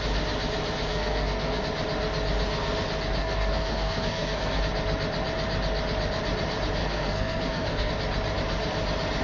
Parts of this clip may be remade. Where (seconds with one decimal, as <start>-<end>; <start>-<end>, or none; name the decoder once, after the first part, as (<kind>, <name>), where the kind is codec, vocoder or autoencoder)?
0.9-1.6 (codec, SNAC); 3.2-4.6; 6.8-7.9